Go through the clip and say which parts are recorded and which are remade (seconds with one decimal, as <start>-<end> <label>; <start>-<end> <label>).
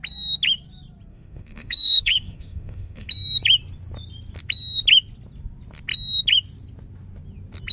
0.0-1.1 recorded; 1.1-3.1 remade; 3.1-7.7 recorded